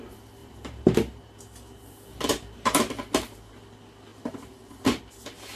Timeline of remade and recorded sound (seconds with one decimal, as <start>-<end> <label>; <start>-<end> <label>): 0.0-0.4 recorded; 0.4-2.8 remade; 2.8-4.1 recorded; 4.1-5.0 remade; 5.0-5.6 recorded

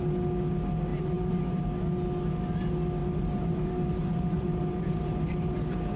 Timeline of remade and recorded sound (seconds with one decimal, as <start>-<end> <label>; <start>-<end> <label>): 0.0-0.9 recorded; 0.9-1.4 remade; 1.4-3.0 recorded; 3.0-5.5 remade; 5.5-6.0 recorded

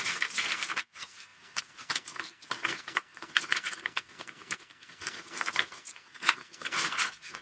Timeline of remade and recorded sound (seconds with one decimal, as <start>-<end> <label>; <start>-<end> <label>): 0.0-7.4 remade

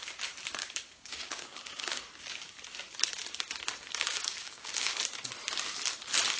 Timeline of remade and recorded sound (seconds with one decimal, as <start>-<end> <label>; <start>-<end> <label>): 0.0-0.6 recorded; 0.6-2.0 remade; 2.0-3.9 recorded; 3.9-4.9 remade; 4.9-6.4 recorded

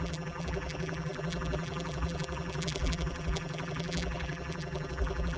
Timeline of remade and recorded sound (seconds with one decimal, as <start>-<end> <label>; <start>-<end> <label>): 0.0-5.4 remade

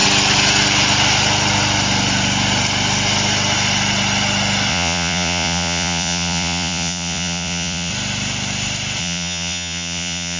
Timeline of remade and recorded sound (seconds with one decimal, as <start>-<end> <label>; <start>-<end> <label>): 0.0-4.7 recorded; 4.7-7.9 remade; 7.9-9.0 recorded; 9.0-10.4 remade

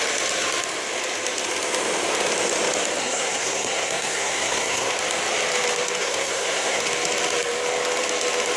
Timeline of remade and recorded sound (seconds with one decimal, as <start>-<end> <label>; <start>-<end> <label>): 0.0-3.0 recorded; 3.0-4.9 remade; 4.9-6.0 recorded; 6.0-6.8 remade; 6.8-8.6 recorded

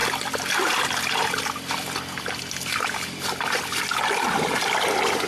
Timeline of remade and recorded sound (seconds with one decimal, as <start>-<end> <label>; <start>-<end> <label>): 0.0-1.4 recorded; 1.4-5.3 remade